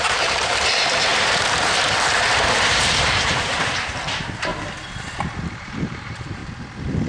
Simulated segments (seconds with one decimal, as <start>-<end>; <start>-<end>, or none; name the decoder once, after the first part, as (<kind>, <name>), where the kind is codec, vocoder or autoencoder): 0.0-4.5 (vocoder, BigVGAN v2); 5.2-6.4